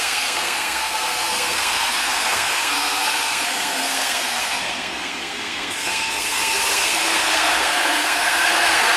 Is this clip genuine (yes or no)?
no